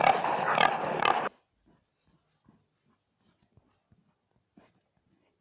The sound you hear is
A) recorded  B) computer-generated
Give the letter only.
A